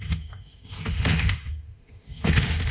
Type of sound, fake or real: fake